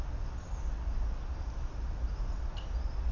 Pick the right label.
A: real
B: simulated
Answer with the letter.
A